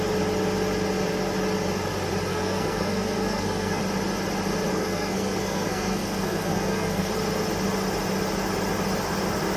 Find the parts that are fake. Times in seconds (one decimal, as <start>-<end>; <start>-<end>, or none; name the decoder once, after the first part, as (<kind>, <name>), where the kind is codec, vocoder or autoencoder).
2.3-3.8 (codec, SNAC); 4.7-7.1